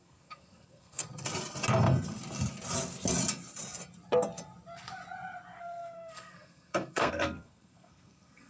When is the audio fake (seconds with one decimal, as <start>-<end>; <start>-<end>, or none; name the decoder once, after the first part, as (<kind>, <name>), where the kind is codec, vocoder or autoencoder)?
0.0-1.0 (codec, SNAC); 5.6-8.5